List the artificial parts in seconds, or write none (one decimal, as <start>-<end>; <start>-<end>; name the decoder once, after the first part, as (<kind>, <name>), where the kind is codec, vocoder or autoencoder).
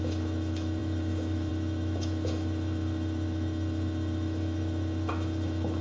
0.0-5.8 (autoencoder, DAC-VAE)